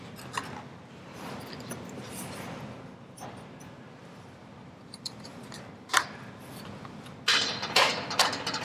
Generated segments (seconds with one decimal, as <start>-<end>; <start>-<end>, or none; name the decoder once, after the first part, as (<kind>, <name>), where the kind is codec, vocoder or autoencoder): 0.7-1.4 (vocoder, BigVGAN v2); 4.0-7.9